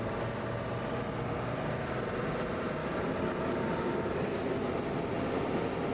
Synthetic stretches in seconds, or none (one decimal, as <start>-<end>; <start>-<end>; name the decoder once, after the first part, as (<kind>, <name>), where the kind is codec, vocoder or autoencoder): 2.8-3.5 (vocoder, BigVGAN v2)